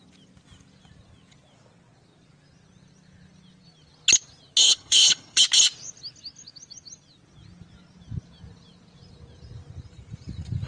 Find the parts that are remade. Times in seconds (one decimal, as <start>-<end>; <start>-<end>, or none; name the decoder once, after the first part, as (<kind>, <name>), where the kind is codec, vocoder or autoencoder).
4.6-5.4 (codec, HILCodec)